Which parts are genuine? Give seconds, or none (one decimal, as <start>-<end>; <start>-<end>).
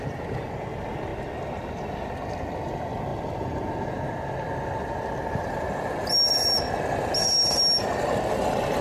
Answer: 0.0-8.8